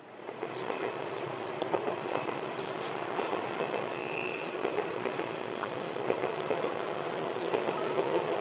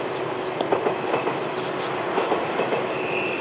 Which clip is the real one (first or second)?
second